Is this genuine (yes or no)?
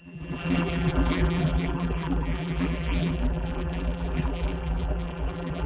no